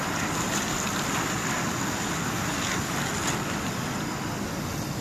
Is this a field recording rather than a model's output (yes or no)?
yes